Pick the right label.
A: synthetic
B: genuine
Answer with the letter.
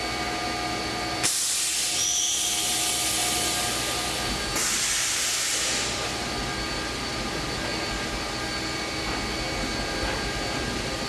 B